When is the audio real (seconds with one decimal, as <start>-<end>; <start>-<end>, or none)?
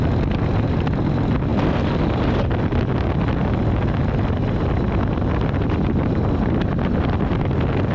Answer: 0.0-7.9